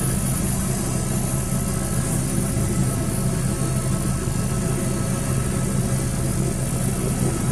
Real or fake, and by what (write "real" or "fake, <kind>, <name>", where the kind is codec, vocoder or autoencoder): real